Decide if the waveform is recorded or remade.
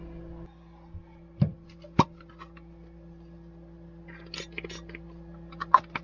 recorded